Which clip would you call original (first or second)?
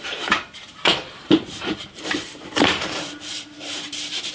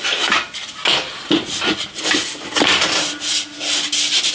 second